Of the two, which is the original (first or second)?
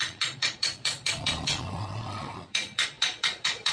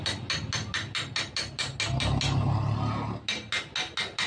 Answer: second